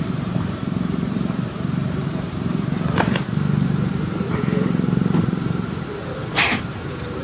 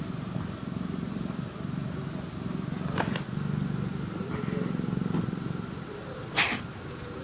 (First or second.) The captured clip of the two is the second